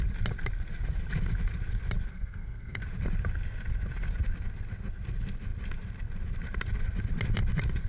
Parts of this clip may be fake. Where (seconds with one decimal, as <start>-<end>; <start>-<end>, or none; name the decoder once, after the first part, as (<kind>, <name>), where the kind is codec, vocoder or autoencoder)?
2.1-2.8 (codec, SNAC)